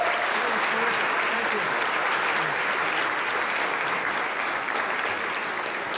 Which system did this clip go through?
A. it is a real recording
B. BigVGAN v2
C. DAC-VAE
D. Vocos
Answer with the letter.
A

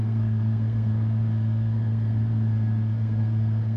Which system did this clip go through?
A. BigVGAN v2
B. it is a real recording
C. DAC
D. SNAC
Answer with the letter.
D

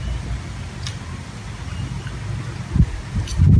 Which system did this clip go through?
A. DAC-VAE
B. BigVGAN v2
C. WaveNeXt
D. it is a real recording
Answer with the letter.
D